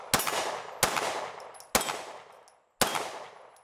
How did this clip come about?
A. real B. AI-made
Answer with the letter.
A